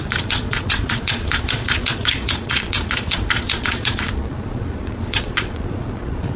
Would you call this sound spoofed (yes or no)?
yes